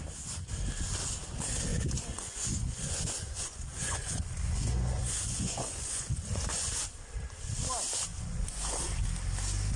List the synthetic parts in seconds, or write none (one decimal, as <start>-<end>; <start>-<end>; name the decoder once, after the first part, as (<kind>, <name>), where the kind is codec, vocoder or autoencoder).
1.7-6.7 (vocoder, Vocos); 8.1-8.9